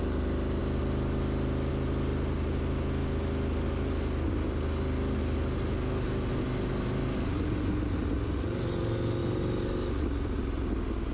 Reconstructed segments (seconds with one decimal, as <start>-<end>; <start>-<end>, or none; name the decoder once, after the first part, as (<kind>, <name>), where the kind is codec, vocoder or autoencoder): 9.2-10.0 (vocoder, BigVGAN v2)